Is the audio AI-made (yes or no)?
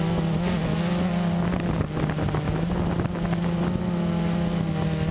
no